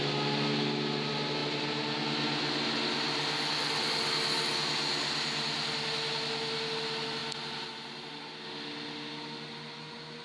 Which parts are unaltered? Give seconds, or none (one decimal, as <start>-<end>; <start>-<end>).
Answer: 0.0-10.2